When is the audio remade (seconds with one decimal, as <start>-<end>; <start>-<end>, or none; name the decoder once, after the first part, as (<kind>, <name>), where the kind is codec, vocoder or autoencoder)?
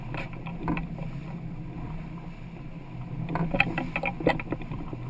none